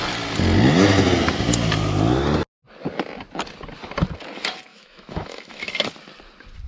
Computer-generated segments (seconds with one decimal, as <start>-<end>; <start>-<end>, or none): 4.7-5.7